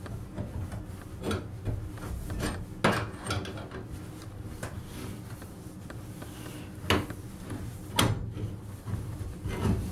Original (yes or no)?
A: yes